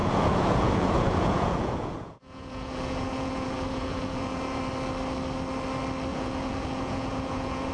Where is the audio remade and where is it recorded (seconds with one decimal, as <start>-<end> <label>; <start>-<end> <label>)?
0.0-4.6 remade; 4.6-6.1 recorded; 6.1-7.7 remade